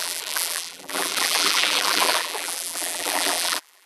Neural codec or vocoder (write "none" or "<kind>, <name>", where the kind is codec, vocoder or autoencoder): vocoder, BigVGAN v2